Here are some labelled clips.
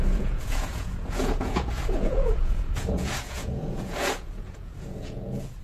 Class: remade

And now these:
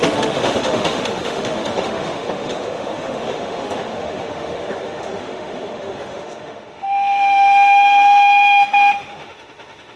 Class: remade